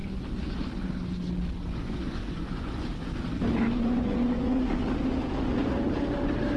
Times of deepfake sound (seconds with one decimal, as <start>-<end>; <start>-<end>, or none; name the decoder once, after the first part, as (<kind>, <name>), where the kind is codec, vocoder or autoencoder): 1.7-2.9 (vocoder, Vocos); 3.8-4.6